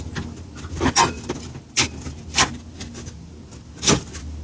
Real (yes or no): yes